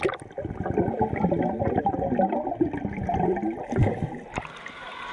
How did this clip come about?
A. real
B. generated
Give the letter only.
A